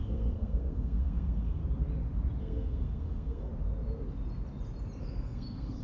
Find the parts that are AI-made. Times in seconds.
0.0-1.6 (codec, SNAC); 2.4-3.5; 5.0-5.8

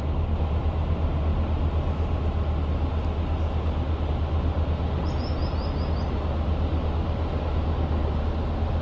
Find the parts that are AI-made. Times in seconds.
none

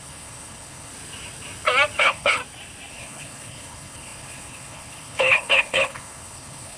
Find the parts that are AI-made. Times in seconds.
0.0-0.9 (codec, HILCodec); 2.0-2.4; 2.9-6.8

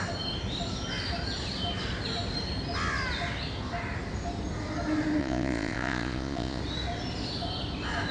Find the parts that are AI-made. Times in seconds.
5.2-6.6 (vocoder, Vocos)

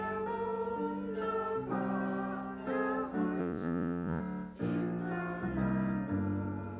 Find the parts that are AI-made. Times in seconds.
3.4-4.2 (vocoder, Vocos)